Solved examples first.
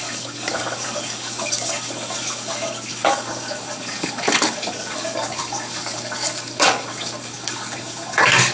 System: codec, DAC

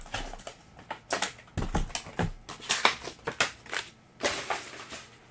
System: none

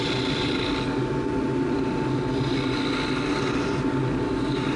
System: none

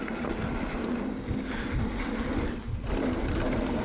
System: none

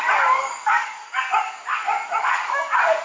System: codec, DAC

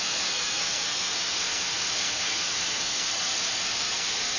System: codec, SNAC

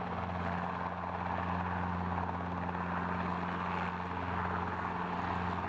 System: none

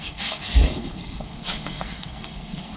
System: codec, SNAC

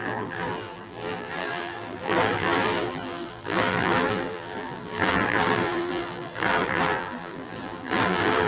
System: vocoder, BigVGAN v2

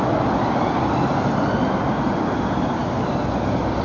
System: none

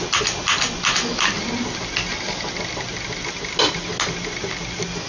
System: none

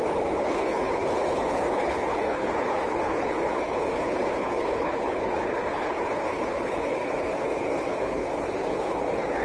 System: codec, HILCodec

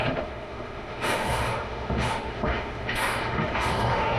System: autoencoder, DAC-VAE